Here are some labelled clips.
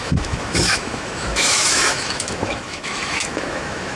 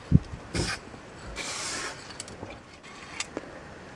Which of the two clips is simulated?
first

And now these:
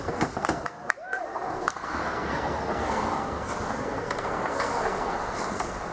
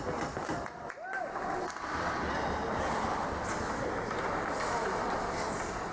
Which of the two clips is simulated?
first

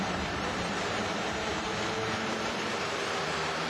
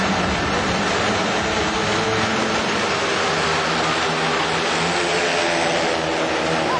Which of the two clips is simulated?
first